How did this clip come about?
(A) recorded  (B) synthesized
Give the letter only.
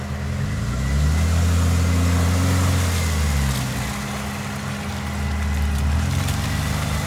A